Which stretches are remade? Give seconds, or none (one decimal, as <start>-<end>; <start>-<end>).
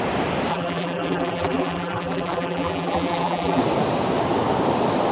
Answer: 0.5-3.6